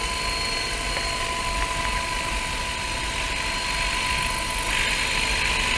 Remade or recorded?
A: recorded